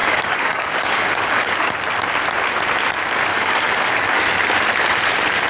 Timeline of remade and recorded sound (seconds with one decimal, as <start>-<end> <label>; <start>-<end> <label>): 0.0-1.7 remade; 1.7-3.3 recorded; 3.3-4.2 remade; 4.2-5.5 recorded